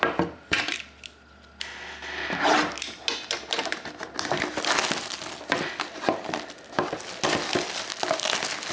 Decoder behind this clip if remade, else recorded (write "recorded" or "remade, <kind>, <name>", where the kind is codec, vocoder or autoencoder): recorded